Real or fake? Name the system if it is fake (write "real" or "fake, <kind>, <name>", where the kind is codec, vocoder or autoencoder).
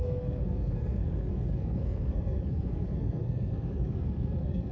fake, codec, SNAC